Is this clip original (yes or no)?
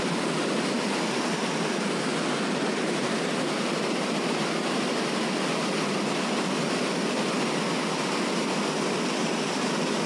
yes